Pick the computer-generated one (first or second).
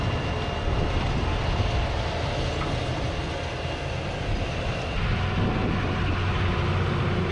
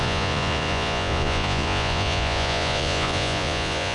second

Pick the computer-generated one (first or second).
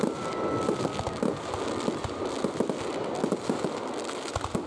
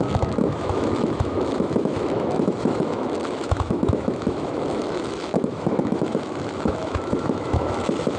second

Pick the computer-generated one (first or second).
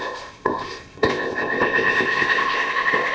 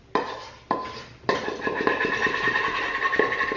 first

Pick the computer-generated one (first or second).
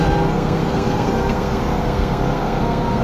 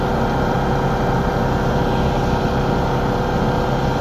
first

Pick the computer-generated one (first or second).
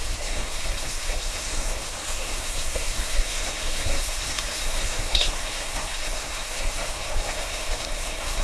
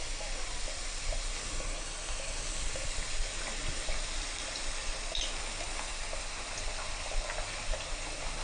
first